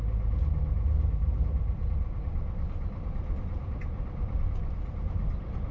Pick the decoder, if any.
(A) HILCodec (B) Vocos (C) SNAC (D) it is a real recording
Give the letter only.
D